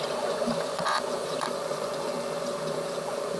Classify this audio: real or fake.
fake